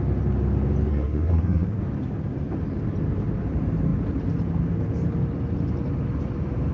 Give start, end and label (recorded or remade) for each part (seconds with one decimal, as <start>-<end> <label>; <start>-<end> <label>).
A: 0.0-0.9 recorded; 0.9-1.8 remade; 1.8-6.7 recorded